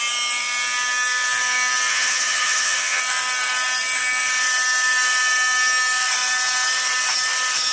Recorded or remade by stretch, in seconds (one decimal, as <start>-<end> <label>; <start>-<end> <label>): 0.0-1.9 recorded; 1.9-3.0 remade; 3.0-7.7 recorded